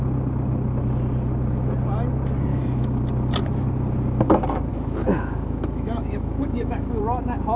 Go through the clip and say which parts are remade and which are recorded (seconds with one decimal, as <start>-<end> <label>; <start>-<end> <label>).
0.0-2.5 recorded; 2.5-3.0 remade; 3.0-4.7 recorded; 4.7-7.0 remade; 7.0-7.6 recorded